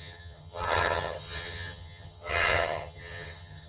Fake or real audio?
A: fake